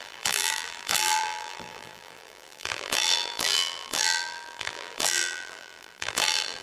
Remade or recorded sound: remade